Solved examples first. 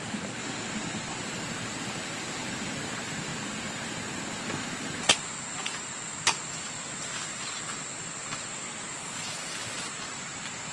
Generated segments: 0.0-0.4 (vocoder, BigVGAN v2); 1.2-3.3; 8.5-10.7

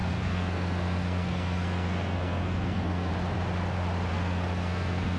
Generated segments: 0.0-3.1 (codec, SNAC); 4.1-5.2

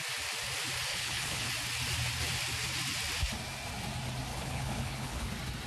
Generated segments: 0.9-1.5 (codec, HILCodec); 4.3-5.3